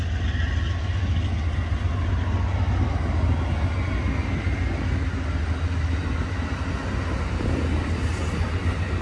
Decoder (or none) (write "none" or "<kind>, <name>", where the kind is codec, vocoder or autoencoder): none